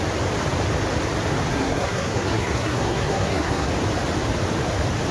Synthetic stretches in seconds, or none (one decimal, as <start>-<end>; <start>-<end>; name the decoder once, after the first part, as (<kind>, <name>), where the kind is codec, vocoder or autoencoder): 1.5-3.7 (codec, SNAC)